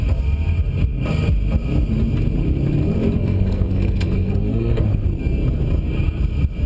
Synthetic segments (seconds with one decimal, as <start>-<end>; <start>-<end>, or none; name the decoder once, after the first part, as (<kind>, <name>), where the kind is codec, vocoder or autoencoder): 3.2-5.2 (codec, SNAC)